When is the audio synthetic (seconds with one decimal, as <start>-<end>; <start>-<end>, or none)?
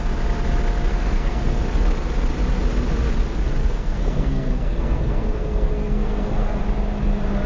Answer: 0.9-1.6; 3.6-6.6